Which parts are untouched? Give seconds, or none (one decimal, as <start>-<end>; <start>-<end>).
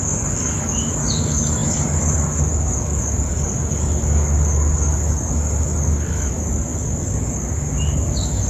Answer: none